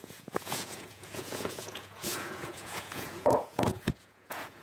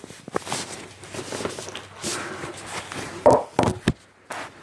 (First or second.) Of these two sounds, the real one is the second